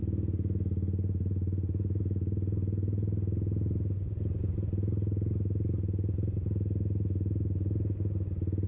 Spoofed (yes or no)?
no